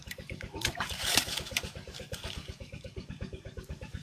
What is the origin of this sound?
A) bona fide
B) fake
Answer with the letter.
B